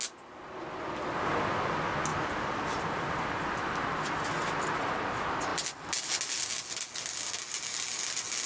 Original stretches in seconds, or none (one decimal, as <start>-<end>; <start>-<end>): 0.0-2.1; 3.2-8.5